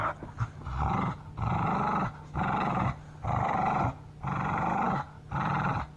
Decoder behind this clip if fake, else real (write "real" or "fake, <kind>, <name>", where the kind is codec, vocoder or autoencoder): real